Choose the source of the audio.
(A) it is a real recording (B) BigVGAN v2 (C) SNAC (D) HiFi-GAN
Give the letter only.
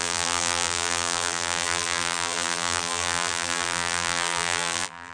B